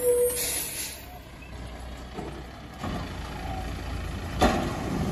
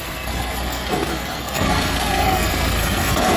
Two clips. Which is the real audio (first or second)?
first